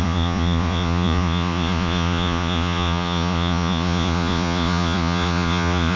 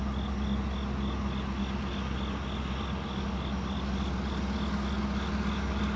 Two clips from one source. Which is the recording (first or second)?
second